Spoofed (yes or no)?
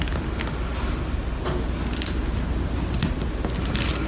no